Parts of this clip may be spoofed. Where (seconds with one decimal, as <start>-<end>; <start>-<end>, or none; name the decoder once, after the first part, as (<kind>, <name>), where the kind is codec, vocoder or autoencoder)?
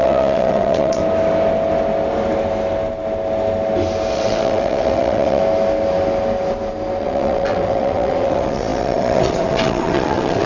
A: 0.0-1.0 (vocoder, WaveNeXt); 4.1-5.4; 7.0-10.5